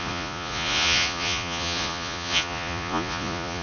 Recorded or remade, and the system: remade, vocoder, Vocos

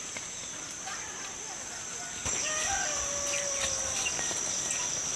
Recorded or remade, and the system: recorded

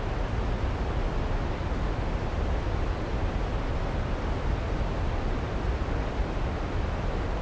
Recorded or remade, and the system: recorded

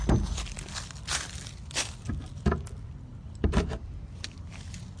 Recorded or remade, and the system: recorded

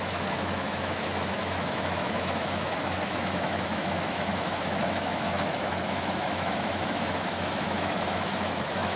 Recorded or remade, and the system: remade, autoencoder, DAC-VAE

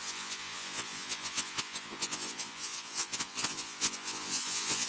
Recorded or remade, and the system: remade, vocoder, Vocos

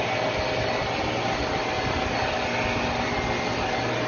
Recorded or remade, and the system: recorded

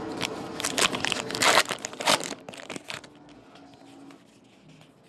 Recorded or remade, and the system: recorded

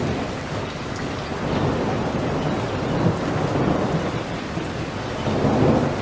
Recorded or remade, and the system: recorded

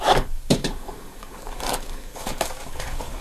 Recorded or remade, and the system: remade, codec, DAC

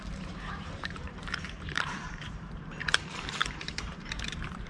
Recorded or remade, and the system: remade, vocoder, BigVGAN v2